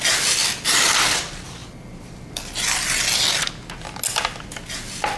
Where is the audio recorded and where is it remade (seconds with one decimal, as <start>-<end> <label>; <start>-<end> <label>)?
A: 0.0-5.2 recorded